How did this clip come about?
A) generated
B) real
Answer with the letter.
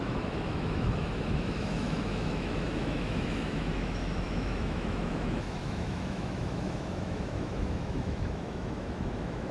A